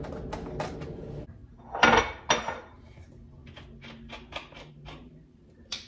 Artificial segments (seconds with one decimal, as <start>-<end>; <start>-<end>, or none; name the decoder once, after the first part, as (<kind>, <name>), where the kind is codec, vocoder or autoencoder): 0.7-1.4 (vocoder, BigVGAN v2); 2.4-3.4; 4.7-5.9